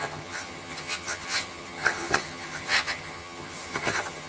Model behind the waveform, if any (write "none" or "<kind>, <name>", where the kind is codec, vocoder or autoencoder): vocoder, HiFi-GAN